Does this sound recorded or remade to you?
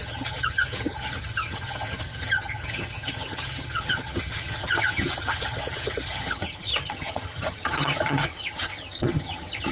remade